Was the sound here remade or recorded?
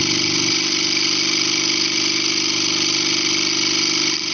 recorded